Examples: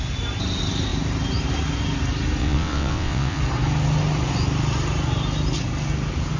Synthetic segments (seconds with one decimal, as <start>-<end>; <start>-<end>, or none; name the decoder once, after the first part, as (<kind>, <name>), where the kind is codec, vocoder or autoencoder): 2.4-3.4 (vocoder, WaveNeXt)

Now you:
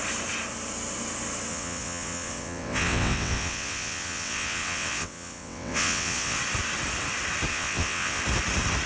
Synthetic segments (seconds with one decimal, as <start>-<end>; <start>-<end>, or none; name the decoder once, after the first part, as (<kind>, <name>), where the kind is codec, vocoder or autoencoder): 1.5-6.4 (vocoder, WaveNeXt); 7.5-8.2

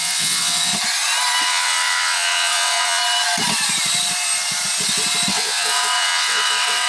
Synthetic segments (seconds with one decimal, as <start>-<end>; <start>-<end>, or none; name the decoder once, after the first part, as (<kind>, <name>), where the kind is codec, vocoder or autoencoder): 0.0-0.7 (vocoder, WaveNeXt); 1.4-3.0; 5.3-6.9

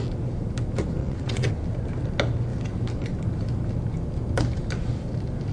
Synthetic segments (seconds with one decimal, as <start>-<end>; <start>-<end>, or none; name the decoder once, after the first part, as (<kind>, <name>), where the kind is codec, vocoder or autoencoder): 1.0-1.5 (vocoder, WaveNeXt)

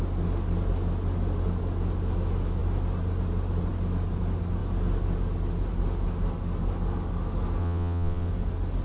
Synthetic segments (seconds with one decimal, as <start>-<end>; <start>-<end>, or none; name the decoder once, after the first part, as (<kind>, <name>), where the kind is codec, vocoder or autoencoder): 7.6-8.3 (vocoder, WaveNeXt)